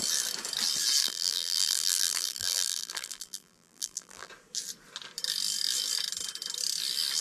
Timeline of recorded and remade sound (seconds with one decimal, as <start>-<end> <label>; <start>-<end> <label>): 0.0-1.0 recorded; 1.0-4.3 remade; 4.3-7.2 recorded